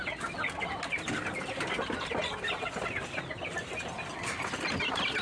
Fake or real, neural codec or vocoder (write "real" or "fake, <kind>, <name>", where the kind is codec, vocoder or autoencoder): real